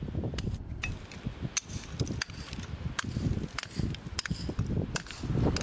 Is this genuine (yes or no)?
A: yes